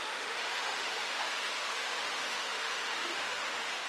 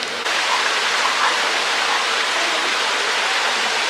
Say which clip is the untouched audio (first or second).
second